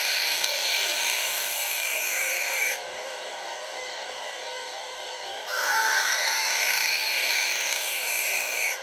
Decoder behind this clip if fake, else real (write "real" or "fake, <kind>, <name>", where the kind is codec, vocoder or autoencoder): fake, codec, DAC